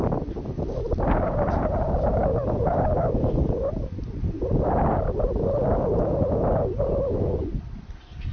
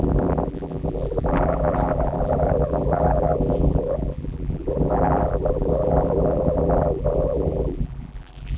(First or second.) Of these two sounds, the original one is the first